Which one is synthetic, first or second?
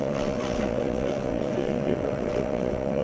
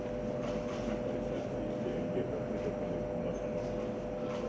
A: first